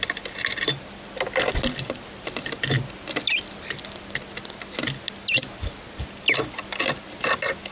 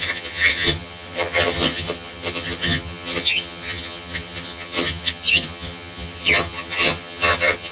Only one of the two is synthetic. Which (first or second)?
second